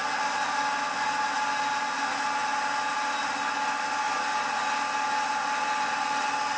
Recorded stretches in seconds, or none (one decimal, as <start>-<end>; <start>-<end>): 0.0-6.6